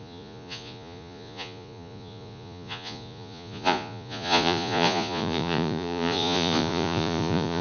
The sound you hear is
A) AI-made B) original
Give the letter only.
A